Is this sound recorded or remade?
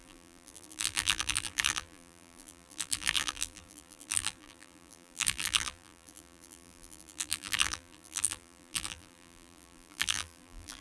remade